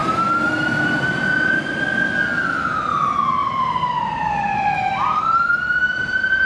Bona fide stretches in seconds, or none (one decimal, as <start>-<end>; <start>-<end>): 0.0-3.4; 4.9-6.5